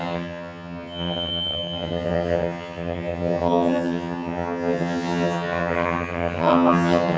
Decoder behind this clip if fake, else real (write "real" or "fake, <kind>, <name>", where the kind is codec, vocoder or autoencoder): fake, vocoder, HiFi-GAN